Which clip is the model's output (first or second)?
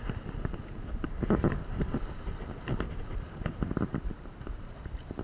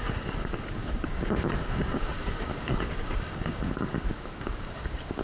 second